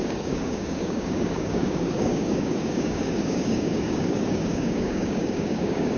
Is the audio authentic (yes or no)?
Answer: no